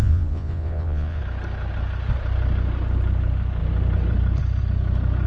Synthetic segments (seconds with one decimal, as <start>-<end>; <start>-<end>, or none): 0.0-1.2